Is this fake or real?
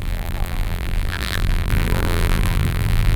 fake